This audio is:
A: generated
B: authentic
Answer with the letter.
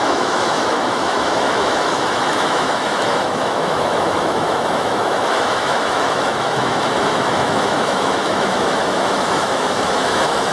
A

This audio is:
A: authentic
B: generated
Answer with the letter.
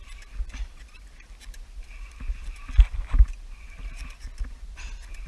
A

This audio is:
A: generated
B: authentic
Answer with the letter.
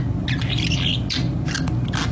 B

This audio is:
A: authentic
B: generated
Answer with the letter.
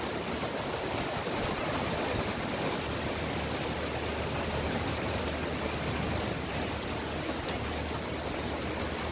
A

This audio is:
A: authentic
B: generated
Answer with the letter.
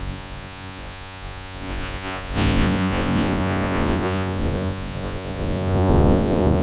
B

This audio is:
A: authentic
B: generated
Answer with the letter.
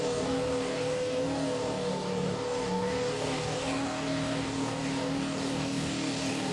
B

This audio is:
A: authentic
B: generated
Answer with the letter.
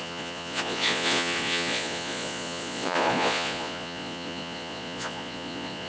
B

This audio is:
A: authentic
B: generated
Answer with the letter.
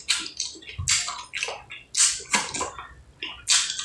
A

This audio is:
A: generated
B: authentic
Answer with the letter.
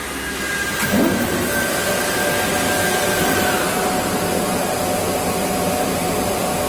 B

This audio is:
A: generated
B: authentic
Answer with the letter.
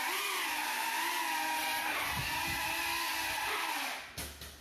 B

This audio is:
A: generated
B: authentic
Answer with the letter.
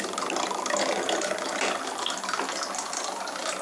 B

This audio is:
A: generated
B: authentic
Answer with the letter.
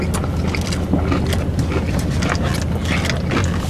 B